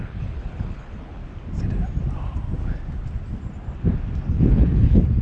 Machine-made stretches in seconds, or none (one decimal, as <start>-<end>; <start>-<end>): 0.0-1.2; 4.3-5.2